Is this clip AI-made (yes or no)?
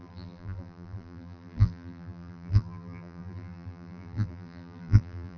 yes